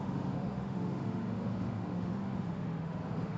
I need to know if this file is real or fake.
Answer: fake